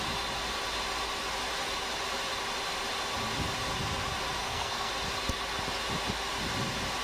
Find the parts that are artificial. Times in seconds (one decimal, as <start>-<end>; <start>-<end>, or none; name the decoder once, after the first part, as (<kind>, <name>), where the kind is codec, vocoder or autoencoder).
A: 4.4-4.9 (codec, SNAC)